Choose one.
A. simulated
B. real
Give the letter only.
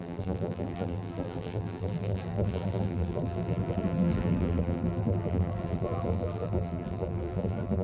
A